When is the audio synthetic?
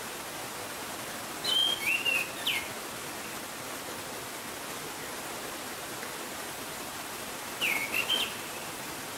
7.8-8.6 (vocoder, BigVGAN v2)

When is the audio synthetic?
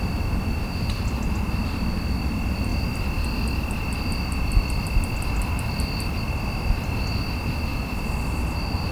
none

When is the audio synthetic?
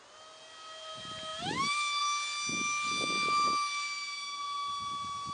none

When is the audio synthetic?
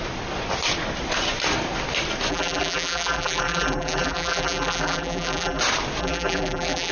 2.3-5.6 (vocoder, BigVGAN v2); 6.0-6.9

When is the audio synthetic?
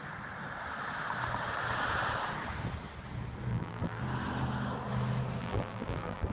3.5-4.0 (vocoder, BigVGAN v2); 5.4-6.3